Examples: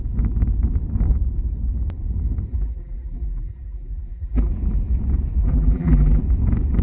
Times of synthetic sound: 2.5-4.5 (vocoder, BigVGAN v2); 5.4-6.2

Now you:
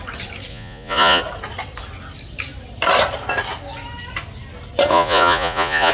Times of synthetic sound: 0.5-1.2 (vocoder, Vocos); 4.9-5.9